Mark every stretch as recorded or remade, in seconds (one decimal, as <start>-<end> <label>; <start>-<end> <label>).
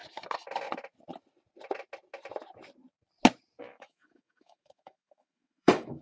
0.0-3.6 recorded; 3.6-6.0 remade